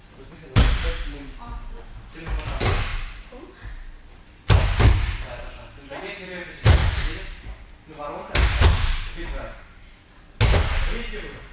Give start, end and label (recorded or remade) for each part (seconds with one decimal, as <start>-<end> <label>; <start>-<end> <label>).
0.0-11.5 recorded